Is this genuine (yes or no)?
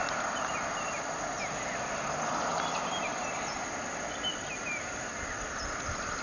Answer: yes